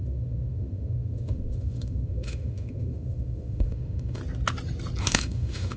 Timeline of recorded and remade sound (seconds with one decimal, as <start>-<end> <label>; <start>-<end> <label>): 0.0-4.2 remade; 4.2-5.0 recorded; 5.0-5.8 remade